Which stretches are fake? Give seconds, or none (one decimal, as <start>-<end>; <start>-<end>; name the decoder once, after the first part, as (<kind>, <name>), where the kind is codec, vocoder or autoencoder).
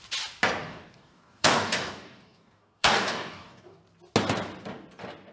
0.6-3.8 (codec, DAC)